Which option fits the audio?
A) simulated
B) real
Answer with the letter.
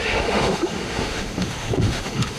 A